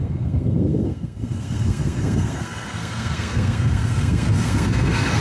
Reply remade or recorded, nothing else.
remade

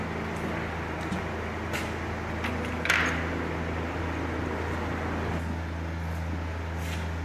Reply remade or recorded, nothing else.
recorded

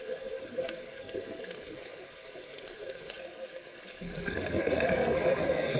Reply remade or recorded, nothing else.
remade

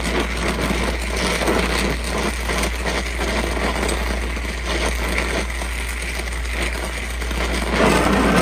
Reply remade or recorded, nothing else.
recorded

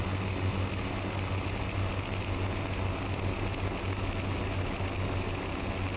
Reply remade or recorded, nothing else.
recorded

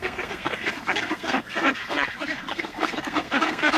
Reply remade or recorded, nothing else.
remade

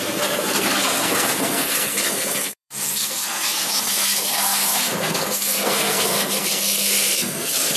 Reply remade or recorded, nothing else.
remade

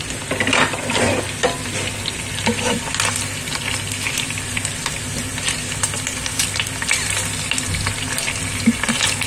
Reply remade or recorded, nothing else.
recorded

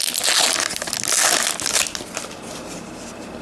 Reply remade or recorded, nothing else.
recorded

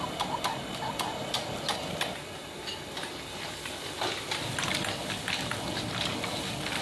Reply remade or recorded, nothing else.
recorded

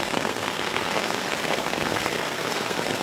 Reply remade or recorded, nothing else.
remade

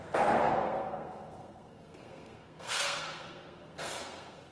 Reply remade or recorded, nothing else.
remade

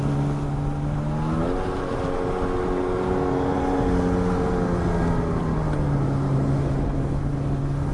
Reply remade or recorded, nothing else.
recorded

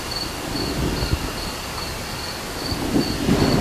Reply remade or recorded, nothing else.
recorded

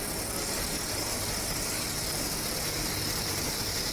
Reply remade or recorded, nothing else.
recorded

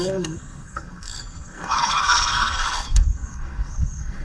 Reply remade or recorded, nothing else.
remade